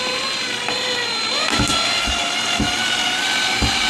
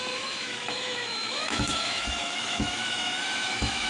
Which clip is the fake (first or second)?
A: second